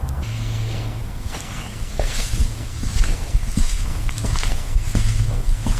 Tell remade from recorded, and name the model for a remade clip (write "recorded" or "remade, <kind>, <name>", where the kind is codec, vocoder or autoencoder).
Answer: remade, codec, SNAC